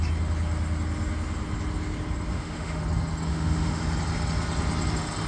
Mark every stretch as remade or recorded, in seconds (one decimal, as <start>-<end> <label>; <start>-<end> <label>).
0.0-2.3 recorded; 2.3-2.8 remade; 2.8-3.3 recorded; 3.3-3.8 remade; 3.8-5.3 recorded